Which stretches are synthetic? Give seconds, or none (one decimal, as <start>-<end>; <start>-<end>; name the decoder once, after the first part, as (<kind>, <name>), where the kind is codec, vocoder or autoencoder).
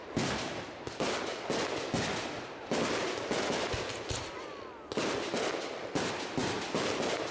none